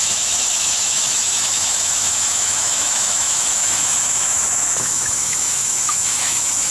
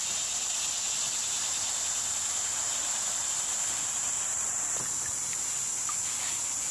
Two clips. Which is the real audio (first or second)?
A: second